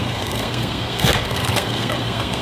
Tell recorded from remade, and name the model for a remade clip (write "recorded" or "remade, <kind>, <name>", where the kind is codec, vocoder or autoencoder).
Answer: remade, codec, SNAC